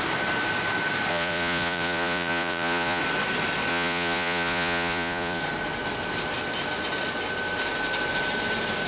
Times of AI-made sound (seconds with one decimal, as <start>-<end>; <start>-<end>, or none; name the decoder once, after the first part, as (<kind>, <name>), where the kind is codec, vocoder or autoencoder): 1.1-3.0 (vocoder, Vocos); 3.7-5.4